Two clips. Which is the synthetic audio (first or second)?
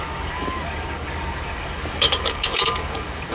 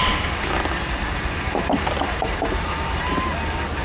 first